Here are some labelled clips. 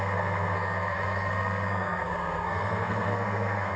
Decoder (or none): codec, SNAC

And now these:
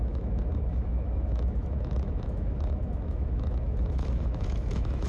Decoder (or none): autoencoder, DAC-VAE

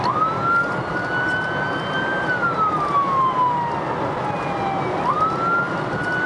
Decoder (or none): none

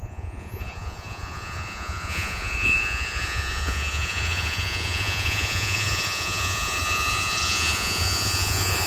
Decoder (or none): vocoder, Vocos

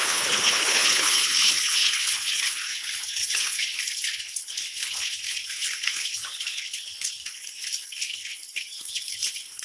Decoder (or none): codec, HILCodec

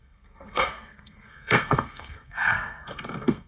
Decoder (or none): codec, SNAC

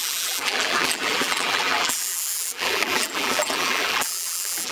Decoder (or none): vocoder, BigVGAN v2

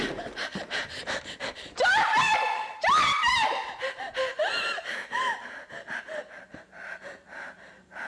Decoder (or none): vocoder, BigVGAN v2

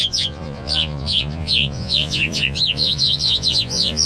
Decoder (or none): vocoder, Vocos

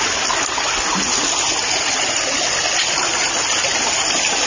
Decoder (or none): none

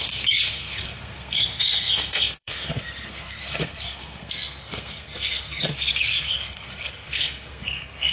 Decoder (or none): codec, SNAC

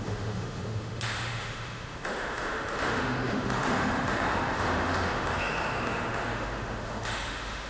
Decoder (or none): autoencoder, DAC-VAE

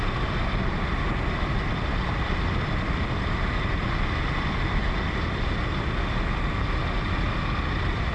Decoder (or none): none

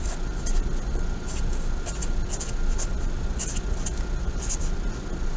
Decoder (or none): none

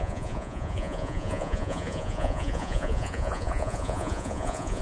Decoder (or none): vocoder, Vocos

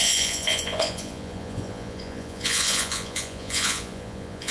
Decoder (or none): vocoder, Vocos